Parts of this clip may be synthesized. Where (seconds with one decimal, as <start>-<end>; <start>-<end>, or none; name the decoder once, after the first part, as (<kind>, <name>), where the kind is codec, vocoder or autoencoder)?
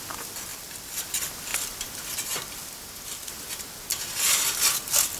0.5-1.1 (vocoder, BigVGAN v2)